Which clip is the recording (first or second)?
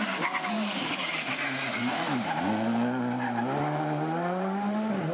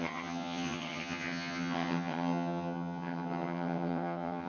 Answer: first